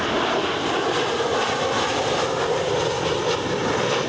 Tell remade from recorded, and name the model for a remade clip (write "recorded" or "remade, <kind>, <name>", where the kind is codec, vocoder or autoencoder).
recorded